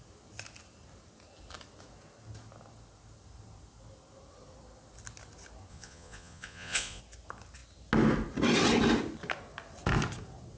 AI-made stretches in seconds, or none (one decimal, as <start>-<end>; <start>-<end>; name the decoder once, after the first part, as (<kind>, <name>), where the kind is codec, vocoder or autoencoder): 5.7-7.0 (vocoder, Vocos)